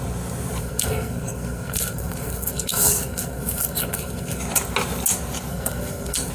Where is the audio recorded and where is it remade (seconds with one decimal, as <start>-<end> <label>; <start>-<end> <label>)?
0.0-0.6 recorded; 0.6-4.4 remade; 4.4-5.5 recorded; 5.5-6.3 remade

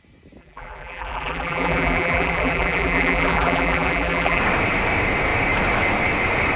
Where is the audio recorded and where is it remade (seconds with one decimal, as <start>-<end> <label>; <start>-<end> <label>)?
0.0-0.4 recorded; 0.4-4.4 remade; 4.4-6.6 recorded

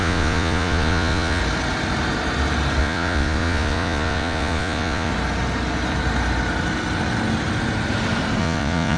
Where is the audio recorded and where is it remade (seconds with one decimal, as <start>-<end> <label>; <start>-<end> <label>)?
0.0-1.4 remade; 1.4-2.8 recorded; 2.8-5.1 remade; 5.1-8.4 recorded; 8.4-9.0 remade